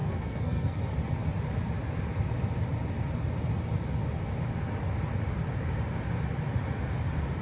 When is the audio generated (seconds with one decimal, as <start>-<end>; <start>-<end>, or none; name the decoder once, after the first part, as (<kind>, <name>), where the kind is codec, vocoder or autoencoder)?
0.0-0.8 (codec, SNAC)